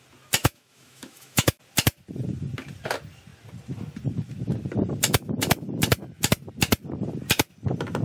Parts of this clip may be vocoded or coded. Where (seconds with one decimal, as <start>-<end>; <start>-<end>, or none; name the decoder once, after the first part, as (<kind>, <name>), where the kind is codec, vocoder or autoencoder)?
0.4-1.6 (autoencoder, DAC-VAE)